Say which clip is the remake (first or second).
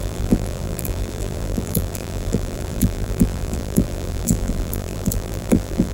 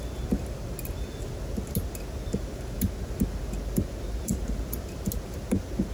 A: first